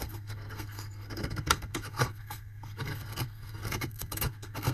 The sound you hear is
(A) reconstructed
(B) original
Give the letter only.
A